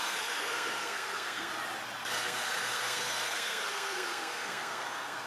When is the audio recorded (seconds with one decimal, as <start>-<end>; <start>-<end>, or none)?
1.5-2.0